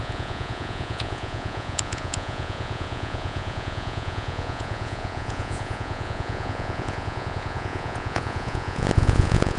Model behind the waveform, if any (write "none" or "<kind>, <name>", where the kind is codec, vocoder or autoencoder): vocoder, Vocos